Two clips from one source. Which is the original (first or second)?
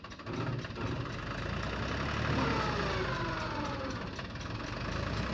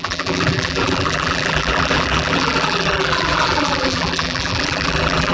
first